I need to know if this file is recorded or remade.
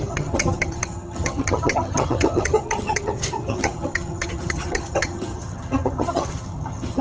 remade